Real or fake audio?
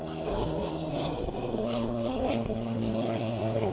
fake